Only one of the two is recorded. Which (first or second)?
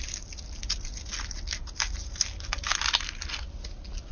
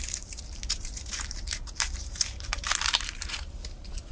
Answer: first